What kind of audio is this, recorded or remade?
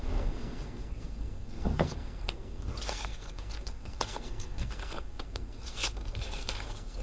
remade